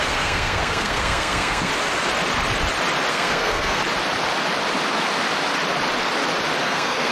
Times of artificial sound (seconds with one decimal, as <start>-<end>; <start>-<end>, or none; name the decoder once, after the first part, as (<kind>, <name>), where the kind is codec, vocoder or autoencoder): 0.0-1.7 (codec, SNAC); 3.1-3.8; 6.6-7.1